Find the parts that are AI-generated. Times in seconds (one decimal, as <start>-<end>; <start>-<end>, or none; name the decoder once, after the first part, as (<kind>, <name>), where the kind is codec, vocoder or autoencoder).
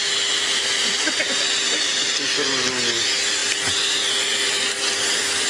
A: none